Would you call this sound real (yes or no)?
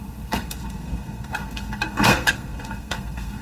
no